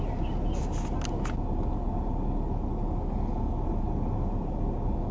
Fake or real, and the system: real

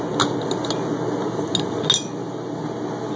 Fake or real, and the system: real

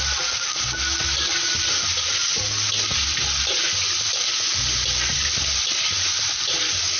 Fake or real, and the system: real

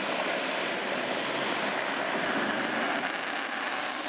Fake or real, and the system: real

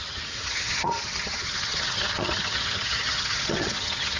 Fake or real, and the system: fake, vocoder, HiFi-GAN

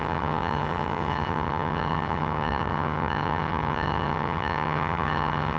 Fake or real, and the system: fake, vocoder, HiFi-GAN